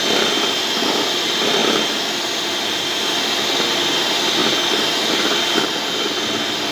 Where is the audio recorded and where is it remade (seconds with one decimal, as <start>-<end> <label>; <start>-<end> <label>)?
0.0-6.7 recorded